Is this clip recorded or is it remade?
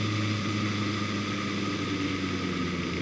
recorded